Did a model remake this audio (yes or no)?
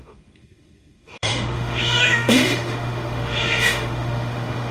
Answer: yes